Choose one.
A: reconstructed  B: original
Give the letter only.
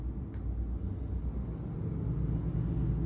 B